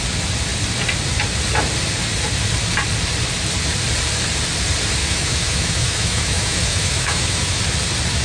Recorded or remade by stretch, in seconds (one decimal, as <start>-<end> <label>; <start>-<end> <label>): 0.0-5.0 recorded; 5.0-7.6 remade; 7.6-8.2 recorded

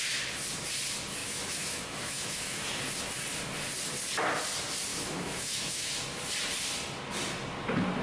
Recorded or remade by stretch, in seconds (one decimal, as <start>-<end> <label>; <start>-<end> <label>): 0.0-1.2 recorded; 1.2-2.8 remade; 2.8-4.9 recorded; 4.9-5.9 remade; 5.9-8.0 recorded

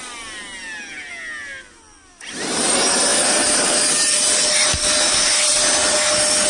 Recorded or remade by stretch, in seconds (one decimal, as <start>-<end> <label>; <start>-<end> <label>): 0.0-6.5 recorded